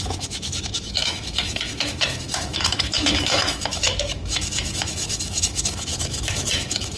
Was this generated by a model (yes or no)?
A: yes